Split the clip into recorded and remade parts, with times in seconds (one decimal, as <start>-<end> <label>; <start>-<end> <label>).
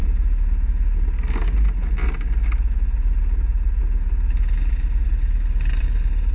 0.0-6.3 recorded